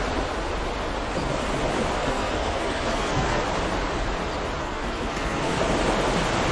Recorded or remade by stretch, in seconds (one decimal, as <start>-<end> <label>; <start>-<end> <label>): 0.0-2.0 recorded; 2.0-3.4 remade; 3.4-4.6 recorded; 4.6-5.6 remade; 5.6-6.5 recorded